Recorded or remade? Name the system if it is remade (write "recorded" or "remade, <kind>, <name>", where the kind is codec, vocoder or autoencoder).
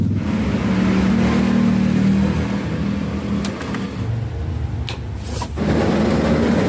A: recorded